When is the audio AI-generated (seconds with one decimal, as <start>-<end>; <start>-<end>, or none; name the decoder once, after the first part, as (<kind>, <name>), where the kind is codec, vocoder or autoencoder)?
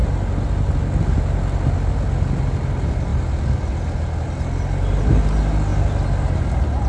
none